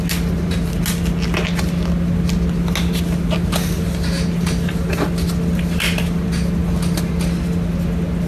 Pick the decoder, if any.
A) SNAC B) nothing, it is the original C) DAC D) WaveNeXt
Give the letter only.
B